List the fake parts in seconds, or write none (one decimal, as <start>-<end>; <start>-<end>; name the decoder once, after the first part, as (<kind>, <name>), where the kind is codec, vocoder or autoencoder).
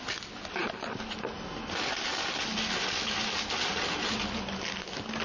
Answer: none